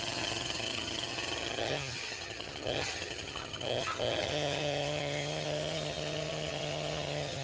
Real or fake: fake